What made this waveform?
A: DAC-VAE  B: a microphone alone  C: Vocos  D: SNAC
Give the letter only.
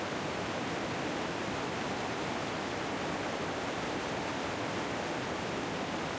B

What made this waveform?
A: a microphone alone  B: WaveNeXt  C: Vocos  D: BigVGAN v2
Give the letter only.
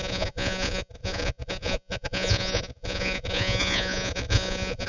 C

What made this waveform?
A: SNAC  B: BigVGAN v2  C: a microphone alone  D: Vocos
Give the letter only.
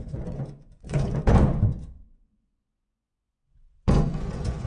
D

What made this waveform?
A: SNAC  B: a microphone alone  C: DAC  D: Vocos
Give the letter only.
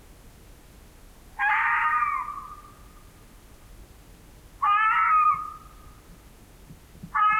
B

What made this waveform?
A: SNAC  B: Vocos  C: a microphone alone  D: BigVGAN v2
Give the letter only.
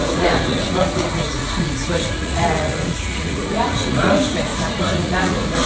B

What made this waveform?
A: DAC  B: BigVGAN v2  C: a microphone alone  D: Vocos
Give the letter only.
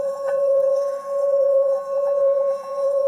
D